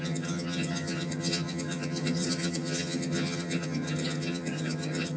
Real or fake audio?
fake